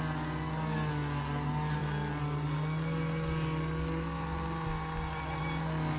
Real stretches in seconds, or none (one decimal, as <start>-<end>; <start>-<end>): 0.0-6.0